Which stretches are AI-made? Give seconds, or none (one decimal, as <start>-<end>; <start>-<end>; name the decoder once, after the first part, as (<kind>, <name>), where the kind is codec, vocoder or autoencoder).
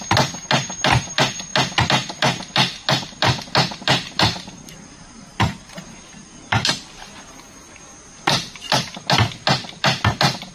none